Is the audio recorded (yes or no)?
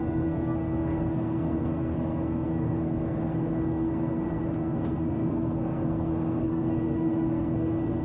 no